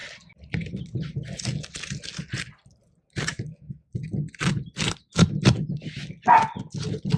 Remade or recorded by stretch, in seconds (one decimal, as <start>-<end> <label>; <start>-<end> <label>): 0.0-3.3 recorded; 3.3-3.9 remade; 3.9-7.2 recorded